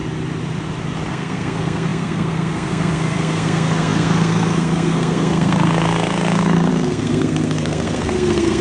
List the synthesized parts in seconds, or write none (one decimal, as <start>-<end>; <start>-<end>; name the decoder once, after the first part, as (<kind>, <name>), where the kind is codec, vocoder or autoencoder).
1.1-8.6 (codec, SNAC)